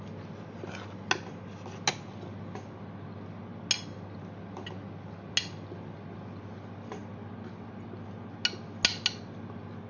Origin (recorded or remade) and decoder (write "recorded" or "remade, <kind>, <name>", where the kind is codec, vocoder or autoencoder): recorded